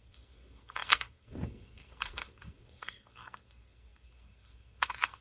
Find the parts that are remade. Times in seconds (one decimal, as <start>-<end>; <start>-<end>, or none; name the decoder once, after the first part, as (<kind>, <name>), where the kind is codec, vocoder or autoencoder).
0.0-5.2 (codec, SNAC)